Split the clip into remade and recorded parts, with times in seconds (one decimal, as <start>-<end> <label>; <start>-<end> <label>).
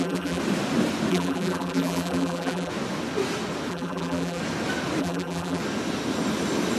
0.0-0.4 remade; 0.4-1.1 recorded; 1.1-2.7 remade; 2.7-3.7 recorded; 3.7-4.4 remade; 4.4-5.0 recorded; 5.0-5.6 remade; 5.6-6.8 recorded